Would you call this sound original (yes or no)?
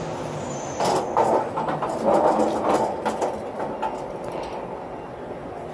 yes